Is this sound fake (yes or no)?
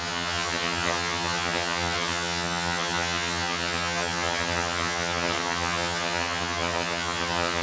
yes